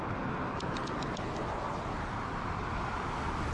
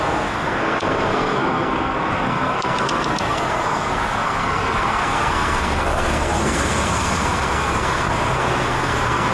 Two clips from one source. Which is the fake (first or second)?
second